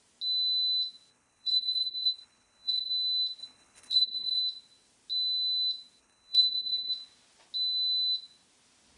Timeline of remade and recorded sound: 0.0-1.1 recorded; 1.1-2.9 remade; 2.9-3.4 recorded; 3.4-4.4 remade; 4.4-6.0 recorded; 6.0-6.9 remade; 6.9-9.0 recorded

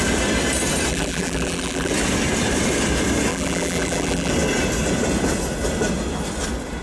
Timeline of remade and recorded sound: 0.0-0.9 recorded; 0.9-1.9 remade; 1.9-3.3 recorded; 3.3-4.3 remade; 4.3-6.8 recorded